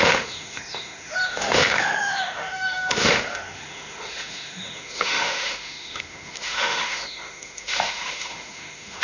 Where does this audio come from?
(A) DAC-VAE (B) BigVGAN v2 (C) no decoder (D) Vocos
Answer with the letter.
A